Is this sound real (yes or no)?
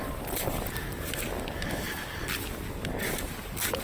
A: yes